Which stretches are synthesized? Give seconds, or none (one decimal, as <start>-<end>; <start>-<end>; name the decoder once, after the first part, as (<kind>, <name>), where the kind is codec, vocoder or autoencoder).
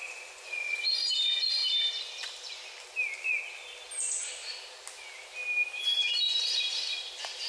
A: 0.0-1.1 (vocoder, Vocos)